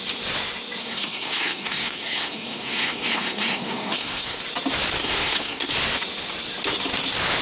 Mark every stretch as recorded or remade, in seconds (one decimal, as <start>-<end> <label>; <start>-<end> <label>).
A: 0.0-0.8 recorded; 0.8-4.4 remade; 4.4-5.0 recorded; 5.0-5.7 remade; 5.7-7.4 recorded